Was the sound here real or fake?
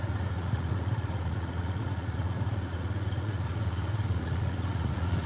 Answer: fake